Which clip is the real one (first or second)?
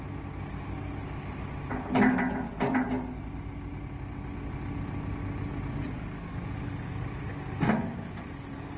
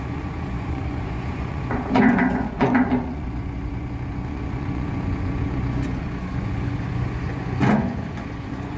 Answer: first